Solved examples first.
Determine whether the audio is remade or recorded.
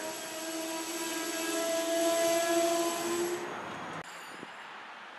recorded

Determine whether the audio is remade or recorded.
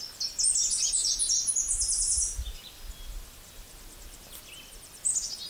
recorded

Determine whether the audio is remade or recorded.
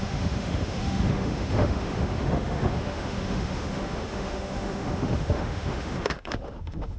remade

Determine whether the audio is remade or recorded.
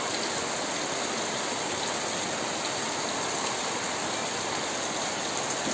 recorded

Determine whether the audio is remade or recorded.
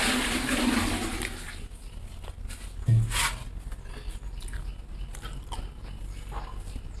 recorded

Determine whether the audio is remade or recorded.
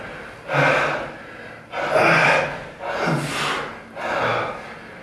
recorded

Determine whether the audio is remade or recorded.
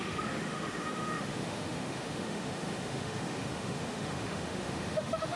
remade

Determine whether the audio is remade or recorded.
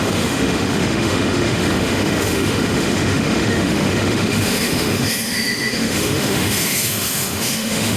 remade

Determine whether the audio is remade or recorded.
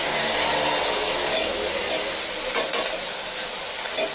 recorded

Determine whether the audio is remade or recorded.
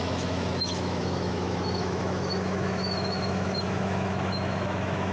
remade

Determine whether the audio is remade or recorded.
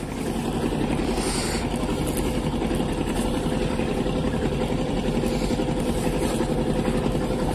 recorded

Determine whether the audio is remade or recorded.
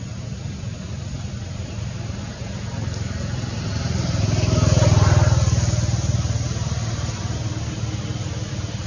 recorded